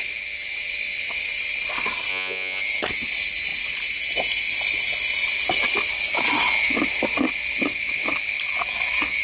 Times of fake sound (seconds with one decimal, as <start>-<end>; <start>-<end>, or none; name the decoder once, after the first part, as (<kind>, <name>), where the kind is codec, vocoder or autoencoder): 2.1-2.6 (vocoder, Vocos)